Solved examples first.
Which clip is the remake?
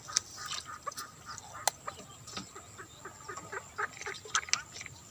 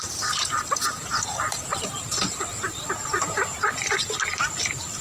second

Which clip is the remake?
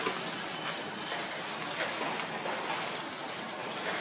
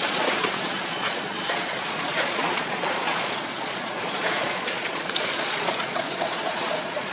second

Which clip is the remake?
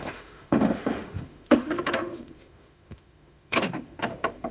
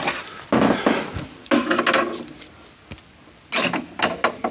first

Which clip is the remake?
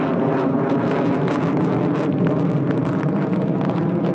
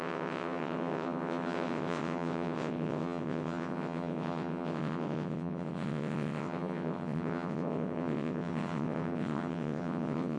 second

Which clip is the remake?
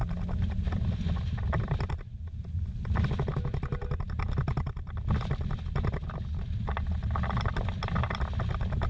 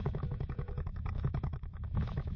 second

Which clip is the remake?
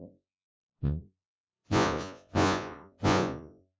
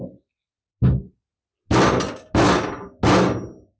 first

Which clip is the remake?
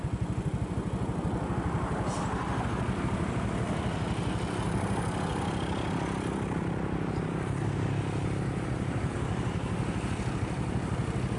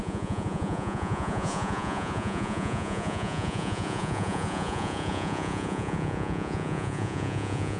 second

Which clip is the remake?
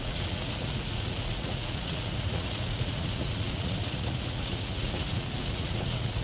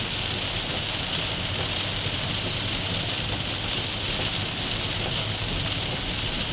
first